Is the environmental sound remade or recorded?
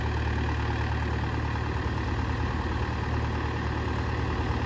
recorded